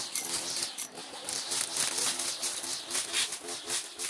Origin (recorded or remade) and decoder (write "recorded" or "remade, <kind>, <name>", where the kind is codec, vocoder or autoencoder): recorded